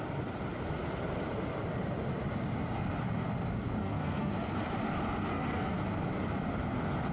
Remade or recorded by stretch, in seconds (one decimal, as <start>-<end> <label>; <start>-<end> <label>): 0.0-3.8 recorded; 3.8-4.3 remade; 4.3-5.3 recorded; 5.3-5.8 remade; 5.8-7.1 recorded